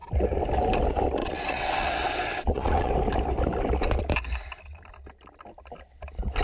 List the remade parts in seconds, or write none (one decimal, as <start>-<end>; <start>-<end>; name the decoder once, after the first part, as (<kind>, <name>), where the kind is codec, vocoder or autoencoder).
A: 1.2-2.9 (vocoder, WaveNeXt)